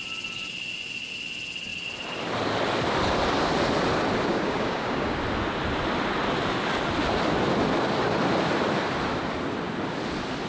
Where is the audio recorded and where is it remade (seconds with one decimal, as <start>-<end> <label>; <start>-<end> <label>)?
0.0-4.3 recorded; 4.3-5.2 remade; 5.2-10.5 recorded